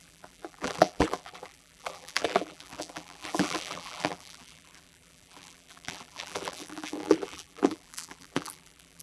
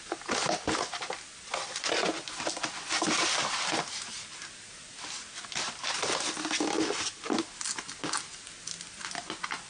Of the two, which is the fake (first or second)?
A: first